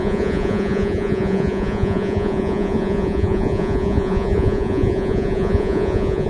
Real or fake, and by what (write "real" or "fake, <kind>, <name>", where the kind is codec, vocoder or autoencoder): fake, vocoder, Vocos